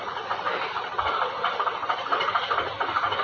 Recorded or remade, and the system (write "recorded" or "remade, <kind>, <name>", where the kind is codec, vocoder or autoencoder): recorded